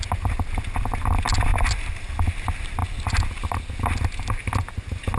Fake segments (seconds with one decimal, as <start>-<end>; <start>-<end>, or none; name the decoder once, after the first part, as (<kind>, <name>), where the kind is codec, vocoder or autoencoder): none